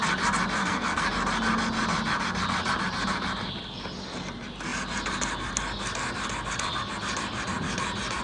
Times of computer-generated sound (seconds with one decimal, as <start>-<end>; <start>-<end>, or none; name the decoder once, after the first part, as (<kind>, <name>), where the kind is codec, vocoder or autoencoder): 0.6-1.1 (codec, SNAC)